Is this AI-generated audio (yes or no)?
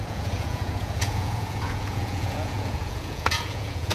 yes